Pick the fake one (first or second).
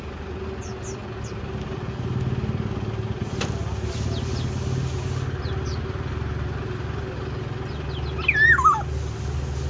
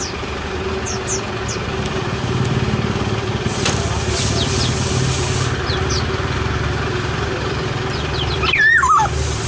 second